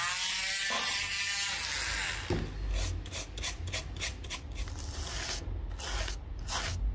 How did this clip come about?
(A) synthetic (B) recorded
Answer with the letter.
B